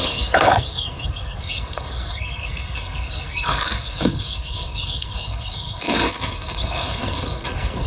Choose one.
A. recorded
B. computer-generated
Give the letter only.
B